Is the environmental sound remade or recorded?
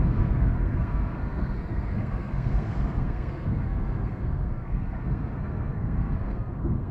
remade